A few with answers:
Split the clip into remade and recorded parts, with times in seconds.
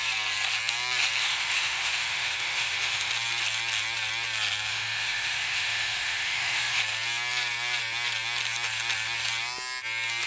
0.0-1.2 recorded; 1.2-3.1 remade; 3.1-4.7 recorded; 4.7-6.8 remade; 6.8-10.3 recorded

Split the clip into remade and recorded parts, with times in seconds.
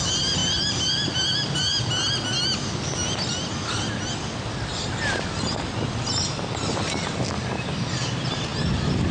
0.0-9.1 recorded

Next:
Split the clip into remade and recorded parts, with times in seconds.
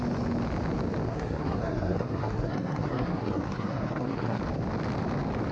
0.0-1.1 recorded; 1.1-4.4 remade; 4.4-5.5 recorded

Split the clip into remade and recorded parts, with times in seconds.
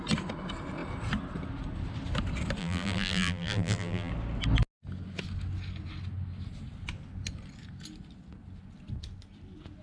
0.0-2.6 recorded; 2.6-4.1 remade; 4.1-9.8 recorded